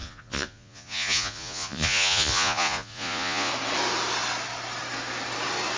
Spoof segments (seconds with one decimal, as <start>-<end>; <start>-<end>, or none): 0.0-3.5